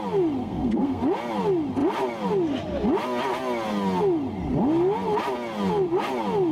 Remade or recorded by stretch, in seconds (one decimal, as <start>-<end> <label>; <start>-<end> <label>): 0.0-0.4 recorded; 0.4-1.0 remade; 1.0-6.5 recorded